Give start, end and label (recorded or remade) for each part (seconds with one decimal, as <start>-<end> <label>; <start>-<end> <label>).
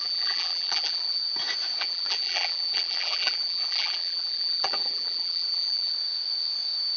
0.0-1.2 remade; 1.2-1.8 recorded; 1.8-5.9 remade; 5.9-7.0 recorded